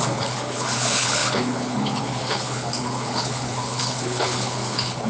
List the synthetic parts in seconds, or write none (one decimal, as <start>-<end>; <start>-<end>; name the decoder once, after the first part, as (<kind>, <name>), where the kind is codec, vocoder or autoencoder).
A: 0.0-5.1 (codec, HILCodec)